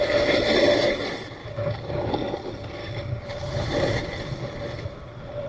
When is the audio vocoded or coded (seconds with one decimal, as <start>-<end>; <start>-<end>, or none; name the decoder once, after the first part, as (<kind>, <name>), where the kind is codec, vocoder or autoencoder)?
1.4-2.1 (codec, DAC); 2.8-3.3